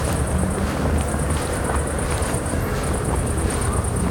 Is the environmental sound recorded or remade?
recorded